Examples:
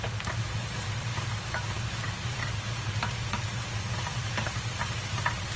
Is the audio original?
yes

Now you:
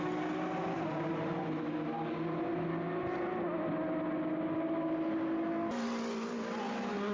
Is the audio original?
yes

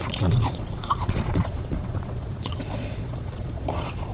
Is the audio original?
no